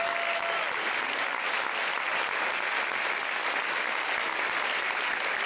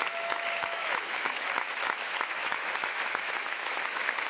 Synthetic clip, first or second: second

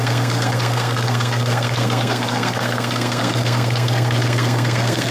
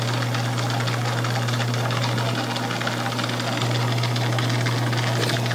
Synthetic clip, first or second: first